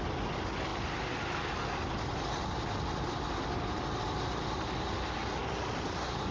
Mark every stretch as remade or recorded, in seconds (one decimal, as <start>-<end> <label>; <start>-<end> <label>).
0.0-6.3 recorded